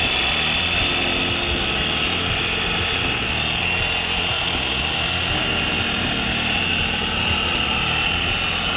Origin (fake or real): real